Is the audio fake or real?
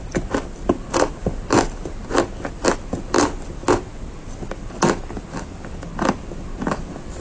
real